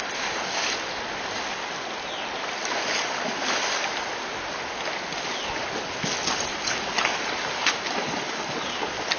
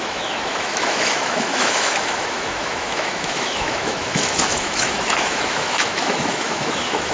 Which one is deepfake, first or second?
second